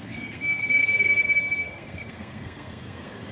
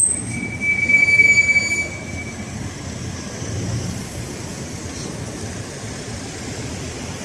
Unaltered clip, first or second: second